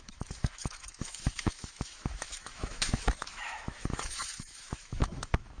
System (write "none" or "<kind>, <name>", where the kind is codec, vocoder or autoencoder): autoencoder, DAC-VAE